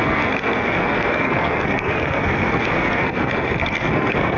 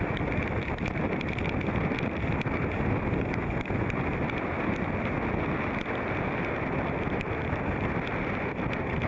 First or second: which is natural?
second